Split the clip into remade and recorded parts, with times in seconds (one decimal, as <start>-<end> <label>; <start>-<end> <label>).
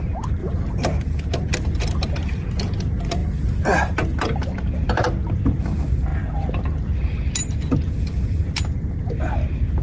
0.0-9.8 recorded